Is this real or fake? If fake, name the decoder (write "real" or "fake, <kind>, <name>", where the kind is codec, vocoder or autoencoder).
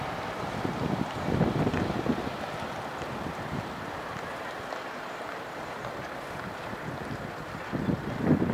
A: real